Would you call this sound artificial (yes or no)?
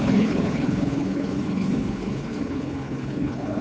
yes